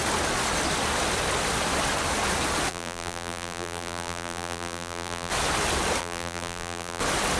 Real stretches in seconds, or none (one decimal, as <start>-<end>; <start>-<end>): 0.0-2.7; 5.3-6.0; 7.0-7.4